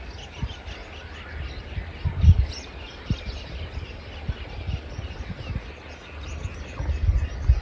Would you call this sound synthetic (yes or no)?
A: no